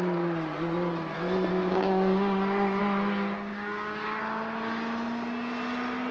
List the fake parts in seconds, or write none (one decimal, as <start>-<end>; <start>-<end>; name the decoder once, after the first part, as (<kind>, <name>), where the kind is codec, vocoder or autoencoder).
1.5-2.8 (codec, DAC); 3.5-4.2